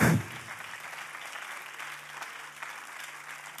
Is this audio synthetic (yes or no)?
no